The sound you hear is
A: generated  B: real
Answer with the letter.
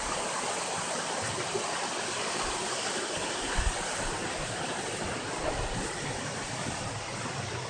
B